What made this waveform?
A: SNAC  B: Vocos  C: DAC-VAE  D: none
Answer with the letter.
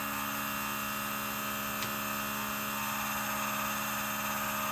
D